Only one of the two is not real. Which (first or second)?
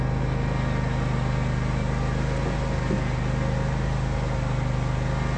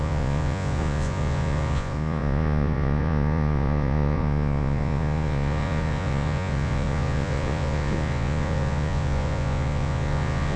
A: second